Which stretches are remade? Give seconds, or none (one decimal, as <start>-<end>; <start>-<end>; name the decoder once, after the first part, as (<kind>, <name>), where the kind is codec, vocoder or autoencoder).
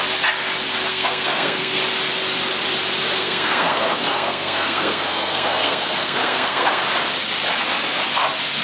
0.9-1.8 (codec, SNAC); 3.2-6.8